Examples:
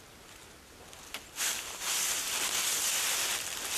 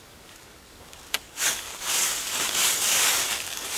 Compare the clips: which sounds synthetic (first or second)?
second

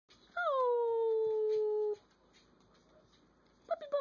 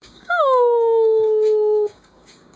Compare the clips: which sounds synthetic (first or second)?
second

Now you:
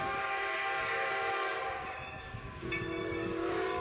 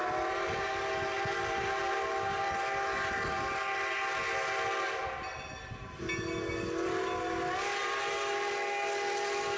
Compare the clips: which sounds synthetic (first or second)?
first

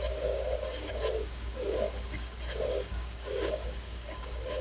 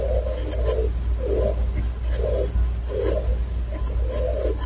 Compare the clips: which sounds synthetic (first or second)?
first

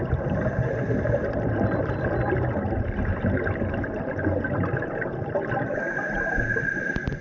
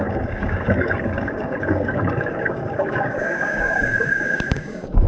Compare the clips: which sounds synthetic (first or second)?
second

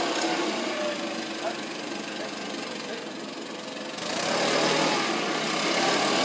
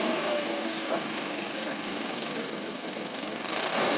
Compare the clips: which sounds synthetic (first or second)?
second